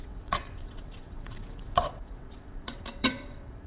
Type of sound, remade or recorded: remade